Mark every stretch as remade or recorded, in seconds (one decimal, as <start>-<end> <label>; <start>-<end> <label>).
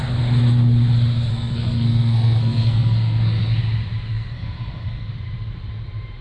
0.0-1.3 recorded; 1.3-3.6 remade; 3.6-4.1 recorded; 4.1-5.1 remade; 5.1-6.2 recorded